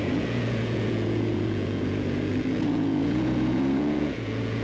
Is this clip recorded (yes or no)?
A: no